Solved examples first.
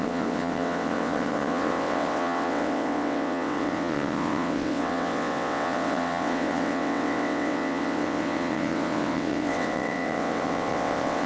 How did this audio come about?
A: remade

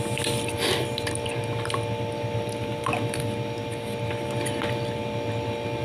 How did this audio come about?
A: recorded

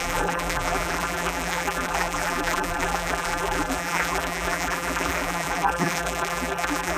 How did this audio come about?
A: remade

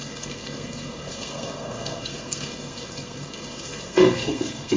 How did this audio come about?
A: remade